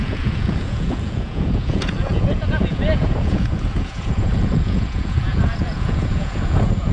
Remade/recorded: remade